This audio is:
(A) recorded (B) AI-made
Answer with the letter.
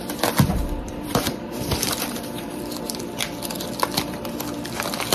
B